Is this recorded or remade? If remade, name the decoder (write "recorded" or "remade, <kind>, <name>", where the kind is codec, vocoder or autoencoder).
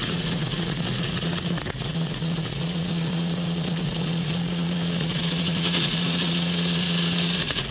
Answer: remade, vocoder, Vocos